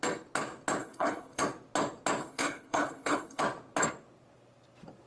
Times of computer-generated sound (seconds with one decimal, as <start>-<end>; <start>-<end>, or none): 0.8-1.4; 2.2-3.4